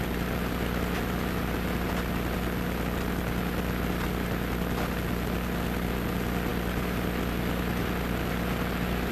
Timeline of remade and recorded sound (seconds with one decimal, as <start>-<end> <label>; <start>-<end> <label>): 0.0-9.1 recorded

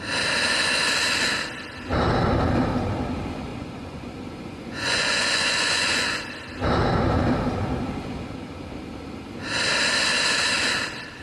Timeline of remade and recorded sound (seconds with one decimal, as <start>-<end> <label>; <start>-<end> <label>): 0.0-3.5 recorded; 3.5-6.3 remade; 6.3-11.2 recorded

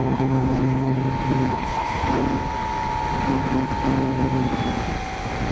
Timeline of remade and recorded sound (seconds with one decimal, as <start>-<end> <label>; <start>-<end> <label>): 0.0-1.0 remade; 1.0-1.5 recorded; 1.5-2.2 remade; 2.2-5.5 recorded

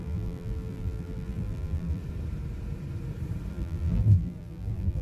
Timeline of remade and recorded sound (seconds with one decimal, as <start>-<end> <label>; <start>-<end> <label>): 0.0-2.0 remade; 2.0-3.5 recorded; 3.5-5.0 remade

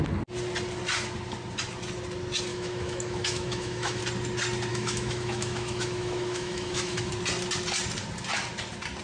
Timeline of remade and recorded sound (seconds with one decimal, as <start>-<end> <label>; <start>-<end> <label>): 0.0-2.5 recorded; 2.5-4.0 remade; 4.0-4.7 recorded; 4.7-7.1 remade; 7.1-9.0 recorded

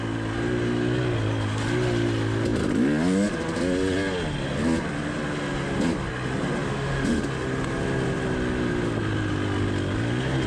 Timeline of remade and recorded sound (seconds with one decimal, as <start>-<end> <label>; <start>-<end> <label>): 0.0-6.7 recorded; 6.7-7.2 remade; 7.2-10.5 recorded